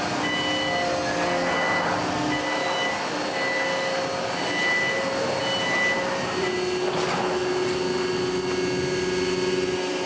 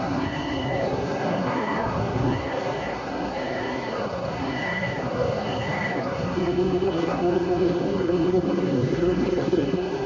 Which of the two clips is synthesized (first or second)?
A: second